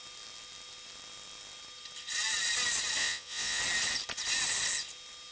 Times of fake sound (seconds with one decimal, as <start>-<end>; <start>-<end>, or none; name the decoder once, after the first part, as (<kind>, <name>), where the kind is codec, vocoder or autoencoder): 3.0-3.6 (vocoder, Vocos)